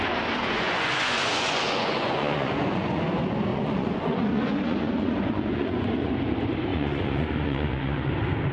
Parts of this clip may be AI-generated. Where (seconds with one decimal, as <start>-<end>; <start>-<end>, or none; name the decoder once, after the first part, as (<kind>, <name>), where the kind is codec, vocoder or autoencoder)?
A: 0.4-3.0 (vocoder, Vocos); 3.5-6.1; 6.7-8.1